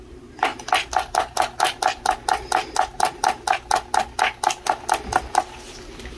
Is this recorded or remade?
recorded